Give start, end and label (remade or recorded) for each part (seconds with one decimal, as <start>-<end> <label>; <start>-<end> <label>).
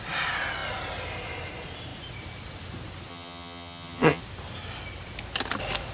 0.0-3.1 recorded; 3.1-4.2 remade; 4.2-5.9 recorded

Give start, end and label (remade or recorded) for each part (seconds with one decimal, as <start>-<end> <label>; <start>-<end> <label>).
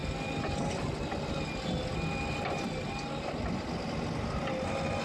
0.0-5.0 recorded